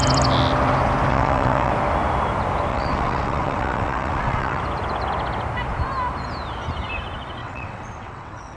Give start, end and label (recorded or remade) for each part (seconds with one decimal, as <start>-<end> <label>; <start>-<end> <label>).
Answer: 0.0-1.1 recorded; 1.1-1.7 remade; 1.7-2.7 recorded; 2.7-4.6 remade; 4.6-7.4 recorded; 7.4-8.6 remade